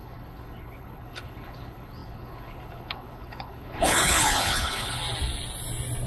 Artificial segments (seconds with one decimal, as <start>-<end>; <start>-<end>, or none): 0.0-5.0